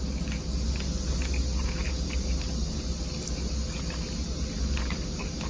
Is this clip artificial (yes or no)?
no